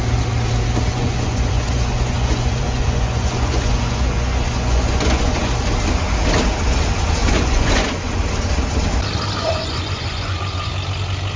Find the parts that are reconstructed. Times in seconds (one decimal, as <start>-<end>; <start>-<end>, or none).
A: 0.9-5.5; 7.2-8.2; 9.4-10.7